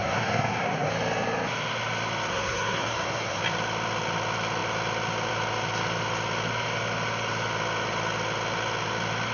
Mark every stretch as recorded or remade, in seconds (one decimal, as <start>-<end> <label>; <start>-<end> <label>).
0.0-0.9 remade; 0.9-2.3 recorded; 2.3-3.4 remade; 3.4-9.3 recorded

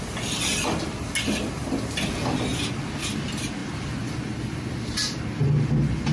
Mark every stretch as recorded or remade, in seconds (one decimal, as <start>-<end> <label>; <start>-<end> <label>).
0.0-6.1 recorded

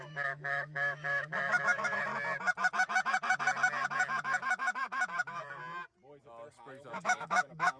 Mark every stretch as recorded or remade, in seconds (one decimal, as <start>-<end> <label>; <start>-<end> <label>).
0.0-2.1 remade; 2.1-6.7 recorded; 6.7-7.8 remade